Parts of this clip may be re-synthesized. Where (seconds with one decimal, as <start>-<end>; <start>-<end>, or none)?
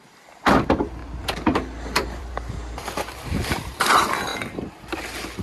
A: 0.0-4.3; 4.8-5.4